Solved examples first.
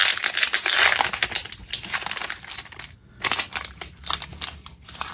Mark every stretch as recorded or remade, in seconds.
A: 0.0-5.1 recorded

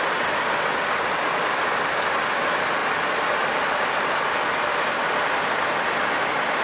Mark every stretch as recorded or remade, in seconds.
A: 0.0-6.6 recorded

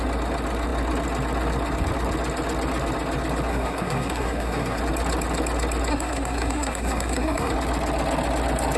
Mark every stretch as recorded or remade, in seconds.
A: 0.0-3.5 recorded; 3.5-4.8 remade; 4.8-5.9 recorded; 5.9-7.5 remade; 7.5-8.8 recorded